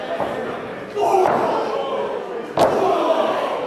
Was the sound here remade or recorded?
recorded